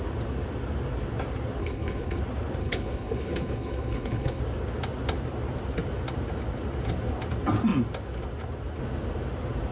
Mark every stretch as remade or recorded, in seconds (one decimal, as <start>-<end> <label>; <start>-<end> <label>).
0.0-1.6 recorded; 1.6-2.2 remade; 2.2-2.6 recorded; 2.6-4.4 remade; 4.4-9.7 recorded